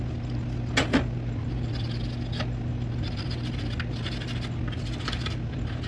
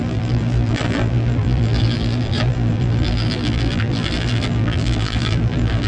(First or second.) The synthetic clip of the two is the second